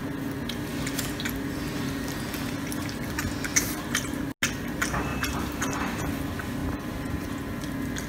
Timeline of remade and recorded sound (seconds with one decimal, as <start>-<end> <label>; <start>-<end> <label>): 0.0-3.5 recorded; 3.5-4.2 remade; 4.2-5.1 recorded; 5.1-6.0 remade; 6.0-6.6 recorded; 6.6-7.3 remade; 7.3-8.1 recorded